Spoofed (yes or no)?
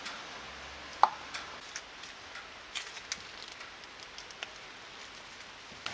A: no